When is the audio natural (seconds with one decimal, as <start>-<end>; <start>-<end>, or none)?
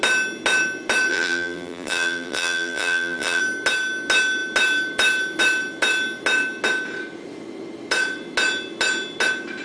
0.0-1.1; 3.4-9.6